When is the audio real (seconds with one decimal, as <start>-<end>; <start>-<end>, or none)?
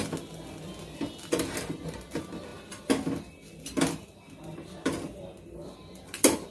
0.0-6.5